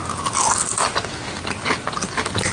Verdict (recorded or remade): recorded